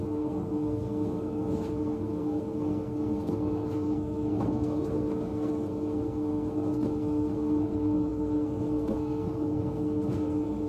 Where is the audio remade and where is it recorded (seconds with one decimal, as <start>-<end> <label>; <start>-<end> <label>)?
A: 0.0-10.7 remade